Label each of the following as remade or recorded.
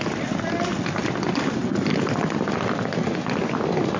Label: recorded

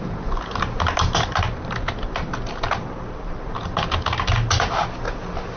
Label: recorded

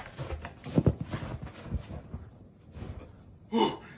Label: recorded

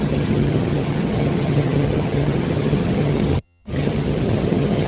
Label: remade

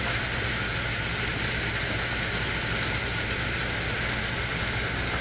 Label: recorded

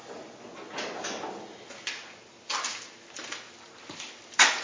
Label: recorded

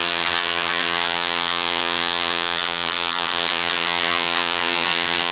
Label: remade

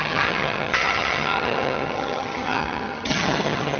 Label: remade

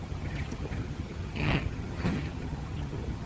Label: remade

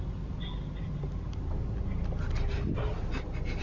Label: recorded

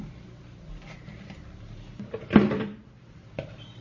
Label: recorded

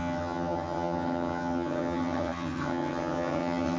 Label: remade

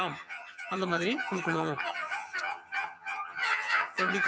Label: remade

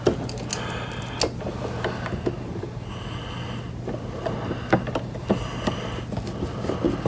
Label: recorded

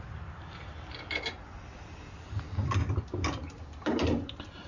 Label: recorded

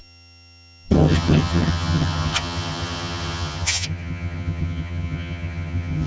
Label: remade